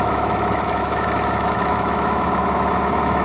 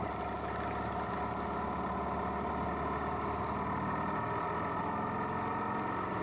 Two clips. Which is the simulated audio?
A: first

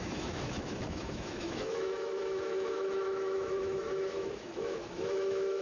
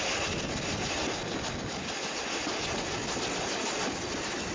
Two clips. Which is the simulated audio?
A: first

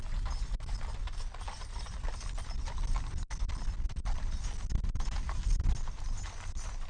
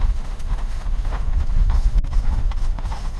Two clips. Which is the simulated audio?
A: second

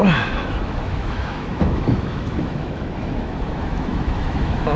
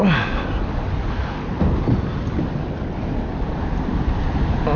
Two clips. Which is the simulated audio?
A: first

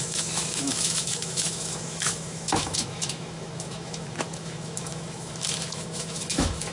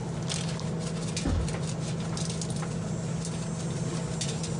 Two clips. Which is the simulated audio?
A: first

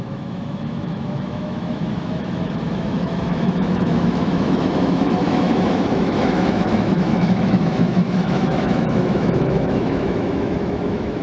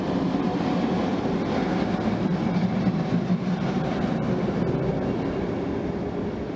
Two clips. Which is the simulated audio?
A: first